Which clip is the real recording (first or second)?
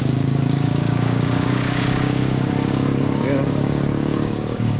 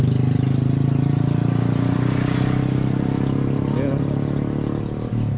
second